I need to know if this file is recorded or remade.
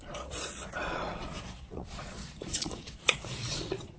remade